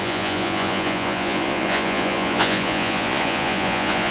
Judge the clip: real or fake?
fake